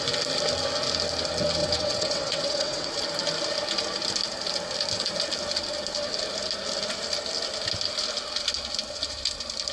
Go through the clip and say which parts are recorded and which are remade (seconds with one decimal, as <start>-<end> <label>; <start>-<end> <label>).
0.0-1.6 recorded; 1.6-2.9 remade; 2.9-9.7 recorded